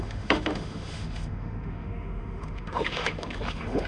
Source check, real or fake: fake